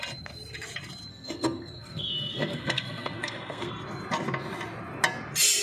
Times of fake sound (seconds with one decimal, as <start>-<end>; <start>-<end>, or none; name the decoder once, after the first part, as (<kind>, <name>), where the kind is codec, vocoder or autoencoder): 1.1-3.7 (codec, SNAC)